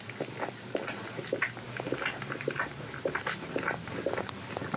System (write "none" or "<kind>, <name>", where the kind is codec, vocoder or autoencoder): none